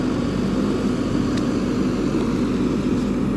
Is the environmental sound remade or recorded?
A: recorded